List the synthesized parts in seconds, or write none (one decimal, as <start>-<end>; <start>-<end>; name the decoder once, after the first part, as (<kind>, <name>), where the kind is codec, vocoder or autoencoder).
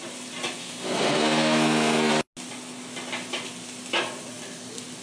0.6-2.1 (codec, SNAC)